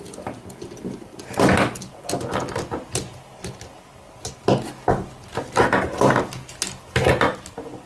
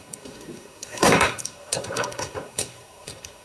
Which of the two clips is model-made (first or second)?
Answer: second